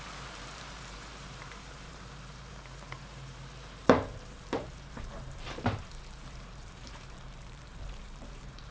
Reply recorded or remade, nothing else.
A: remade